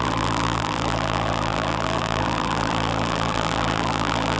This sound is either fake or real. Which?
fake